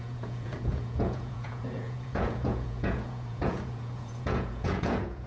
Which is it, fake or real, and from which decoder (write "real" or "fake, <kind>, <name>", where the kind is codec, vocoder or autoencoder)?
fake, vocoder, Vocos